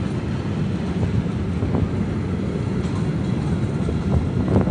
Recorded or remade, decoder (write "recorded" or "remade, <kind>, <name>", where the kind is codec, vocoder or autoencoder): recorded